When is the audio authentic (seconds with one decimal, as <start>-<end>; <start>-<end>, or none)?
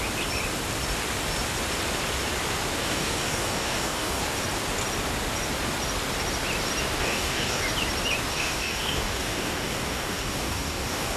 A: 0.0-2.8; 4.2-7.0; 7.6-8.3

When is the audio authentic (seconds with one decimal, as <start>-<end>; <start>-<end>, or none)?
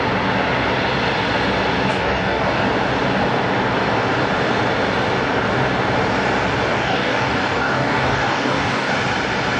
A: 0.0-1.9; 2.6-6.7; 8.9-9.6